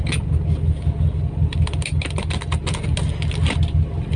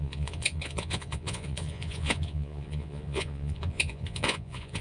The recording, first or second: first